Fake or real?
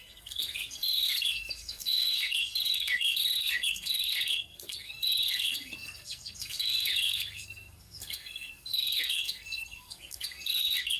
fake